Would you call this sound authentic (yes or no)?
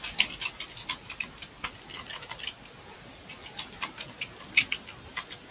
yes